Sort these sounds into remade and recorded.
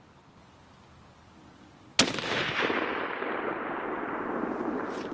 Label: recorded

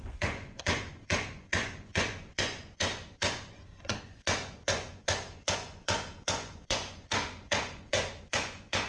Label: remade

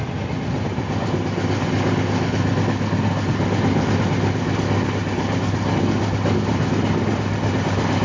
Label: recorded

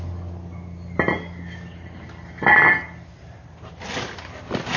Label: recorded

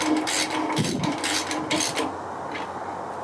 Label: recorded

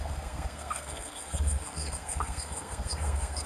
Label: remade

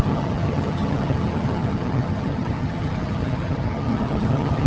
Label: remade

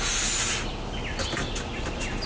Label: recorded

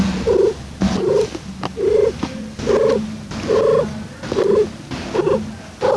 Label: recorded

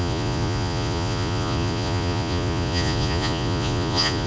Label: remade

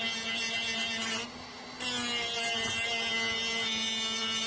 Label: recorded